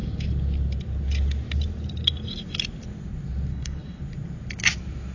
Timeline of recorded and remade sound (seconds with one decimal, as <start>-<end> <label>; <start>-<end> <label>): 0.0-3.5 recorded; 3.5-4.0 remade; 4.0-5.1 recorded